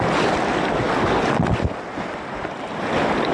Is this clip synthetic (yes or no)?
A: no